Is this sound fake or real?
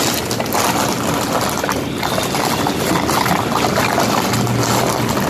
real